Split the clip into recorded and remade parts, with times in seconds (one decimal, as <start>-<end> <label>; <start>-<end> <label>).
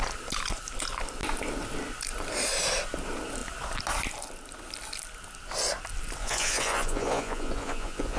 0.0-6.2 recorded; 6.2-8.2 remade